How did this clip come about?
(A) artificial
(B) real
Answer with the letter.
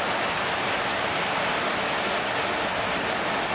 B